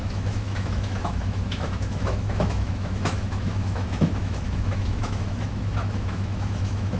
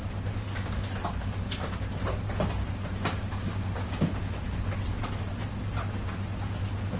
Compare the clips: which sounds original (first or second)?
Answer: second